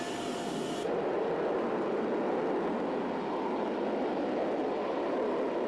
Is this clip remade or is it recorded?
recorded